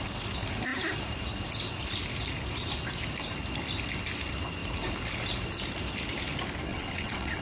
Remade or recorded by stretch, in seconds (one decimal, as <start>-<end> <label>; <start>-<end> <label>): 0.0-6.7 recorded; 6.7-7.4 remade

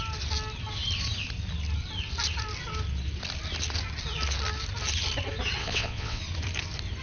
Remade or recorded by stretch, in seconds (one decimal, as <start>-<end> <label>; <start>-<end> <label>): 0.0-5.6 recorded; 5.6-6.2 remade; 6.2-7.0 recorded